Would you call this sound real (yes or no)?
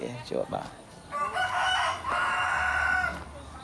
yes